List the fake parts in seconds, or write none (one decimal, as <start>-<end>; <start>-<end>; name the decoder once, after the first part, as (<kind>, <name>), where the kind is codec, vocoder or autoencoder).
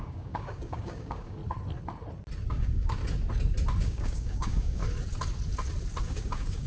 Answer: 0.0-1.4 (codec, DAC); 2.5-3.0; 3.8-4.8; 6.0-6.7